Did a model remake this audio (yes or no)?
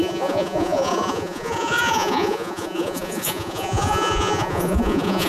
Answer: yes